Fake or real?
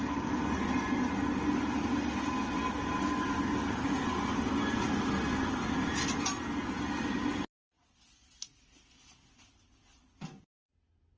real